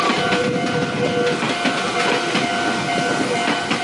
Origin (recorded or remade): recorded